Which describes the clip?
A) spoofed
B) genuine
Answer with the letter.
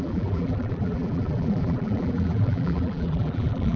A